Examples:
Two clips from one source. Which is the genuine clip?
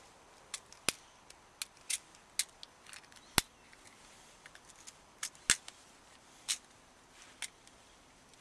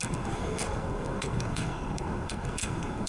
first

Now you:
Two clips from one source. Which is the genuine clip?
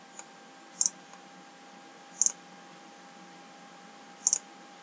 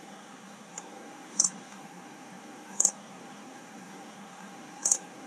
first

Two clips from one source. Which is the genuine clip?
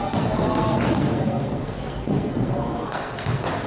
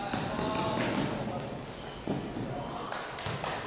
second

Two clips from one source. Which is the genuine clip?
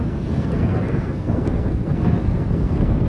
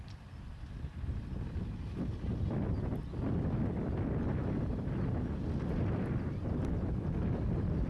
second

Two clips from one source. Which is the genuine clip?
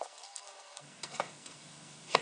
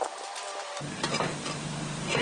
second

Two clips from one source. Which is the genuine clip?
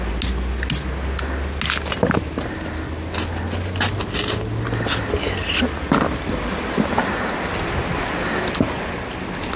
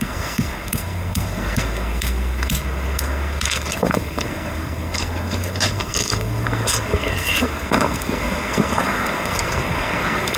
first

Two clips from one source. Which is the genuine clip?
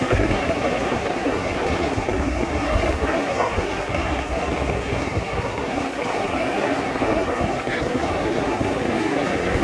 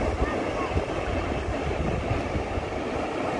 second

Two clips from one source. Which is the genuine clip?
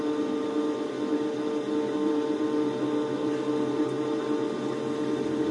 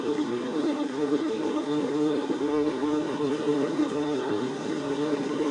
first